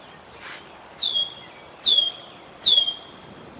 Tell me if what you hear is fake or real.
real